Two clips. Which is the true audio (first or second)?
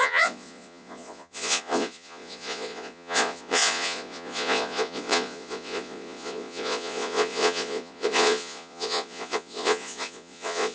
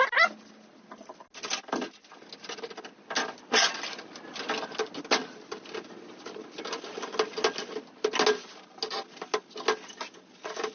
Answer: second